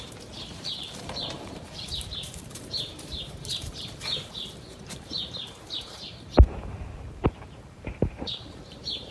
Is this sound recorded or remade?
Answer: remade